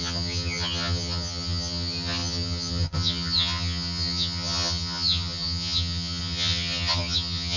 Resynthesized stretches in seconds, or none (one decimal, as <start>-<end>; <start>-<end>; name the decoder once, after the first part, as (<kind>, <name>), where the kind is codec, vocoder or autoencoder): 0.0-7.6 (vocoder, HiFi-GAN)